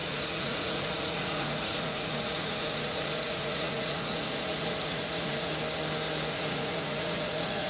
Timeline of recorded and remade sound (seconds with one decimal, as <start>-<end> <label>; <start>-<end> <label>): 0.0-5.5 remade; 5.5-6.3 recorded; 6.3-7.7 remade